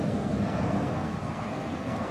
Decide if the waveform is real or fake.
fake